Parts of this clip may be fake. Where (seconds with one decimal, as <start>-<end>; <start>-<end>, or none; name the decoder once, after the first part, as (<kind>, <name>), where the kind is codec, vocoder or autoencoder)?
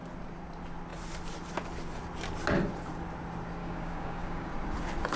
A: 3.6-4.5 (codec, DAC)